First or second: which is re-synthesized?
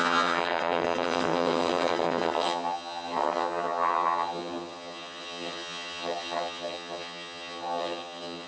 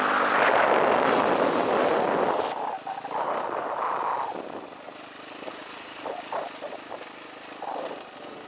first